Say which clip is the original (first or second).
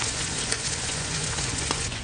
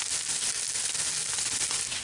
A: second